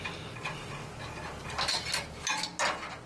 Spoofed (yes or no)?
no